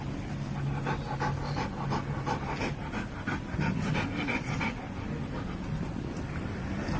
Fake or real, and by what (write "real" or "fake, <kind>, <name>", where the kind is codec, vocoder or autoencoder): real